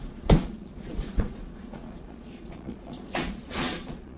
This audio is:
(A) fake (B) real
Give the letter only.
A